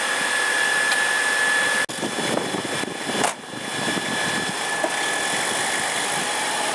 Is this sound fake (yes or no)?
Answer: no